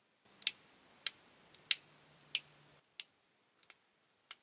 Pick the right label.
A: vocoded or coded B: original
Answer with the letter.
B